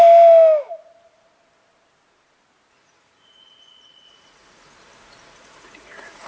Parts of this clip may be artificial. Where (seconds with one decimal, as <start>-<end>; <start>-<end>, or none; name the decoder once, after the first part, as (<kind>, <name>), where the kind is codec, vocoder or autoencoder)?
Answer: 2.7-6.3 (vocoder, Vocos)